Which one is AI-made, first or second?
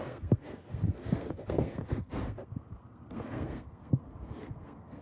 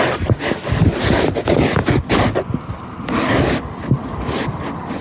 first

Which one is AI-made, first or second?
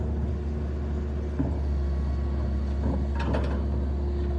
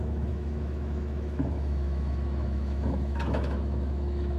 second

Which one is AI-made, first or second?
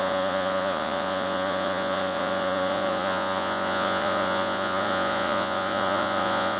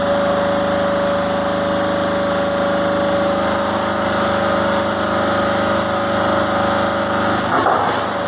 first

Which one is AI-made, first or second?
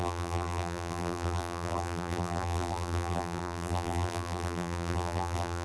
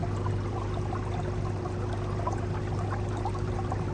first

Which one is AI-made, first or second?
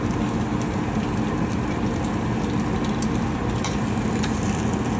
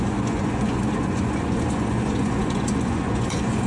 second